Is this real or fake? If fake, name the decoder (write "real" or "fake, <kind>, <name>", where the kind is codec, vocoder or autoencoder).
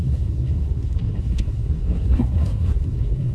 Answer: fake, codec, SNAC